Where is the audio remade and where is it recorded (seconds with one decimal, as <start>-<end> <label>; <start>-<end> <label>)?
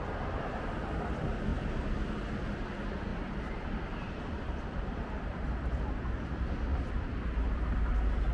0.0-3.1 recorded; 3.1-5.9 remade; 5.9-8.3 recorded